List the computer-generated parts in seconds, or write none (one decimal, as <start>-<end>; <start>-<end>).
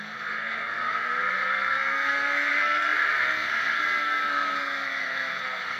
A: 0.0-5.8